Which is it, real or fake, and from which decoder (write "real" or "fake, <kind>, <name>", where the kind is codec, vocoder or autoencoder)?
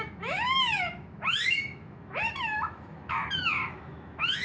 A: fake, autoencoder, DAC-VAE